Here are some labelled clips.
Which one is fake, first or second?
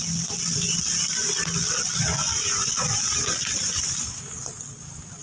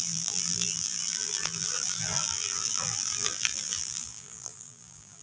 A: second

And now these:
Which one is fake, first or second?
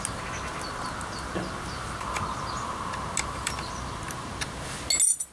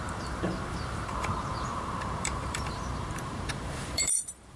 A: second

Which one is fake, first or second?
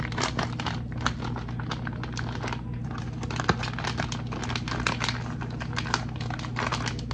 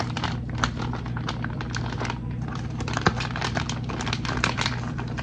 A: second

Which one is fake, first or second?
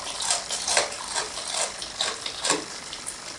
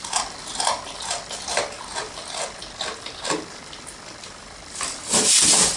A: first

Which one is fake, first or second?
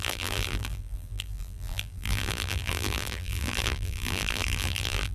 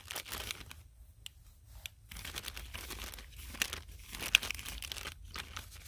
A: first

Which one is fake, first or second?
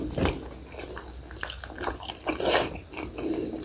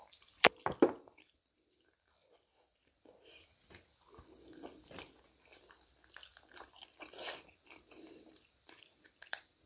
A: second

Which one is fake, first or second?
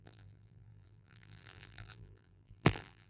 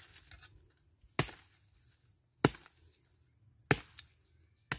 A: first